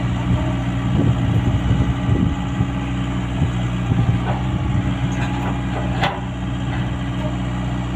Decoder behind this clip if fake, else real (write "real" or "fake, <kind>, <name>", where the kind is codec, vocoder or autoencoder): real